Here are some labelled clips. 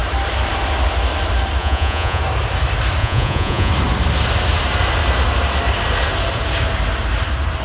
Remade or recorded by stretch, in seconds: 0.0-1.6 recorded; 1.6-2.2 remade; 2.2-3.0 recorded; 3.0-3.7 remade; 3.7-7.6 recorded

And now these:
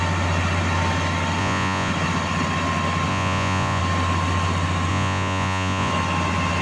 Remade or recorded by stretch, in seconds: 0.0-1.4 recorded; 1.4-1.9 remade; 1.9-3.1 recorded; 3.1-3.8 remade; 3.8-4.9 recorded; 4.9-5.9 remade; 5.9-6.6 recorded

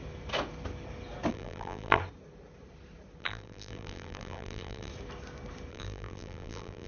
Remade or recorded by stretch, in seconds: 0.0-1.3 recorded; 1.3-2.0 remade; 2.0-3.2 recorded; 3.2-4.9 remade; 4.9-5.7 recorded; 5.7-6.9 remade

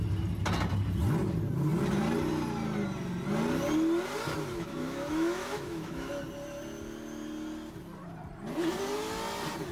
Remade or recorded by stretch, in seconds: 0.0-4.5 recorded; 4.5-6.1 remade; 6.1-9.7 recorded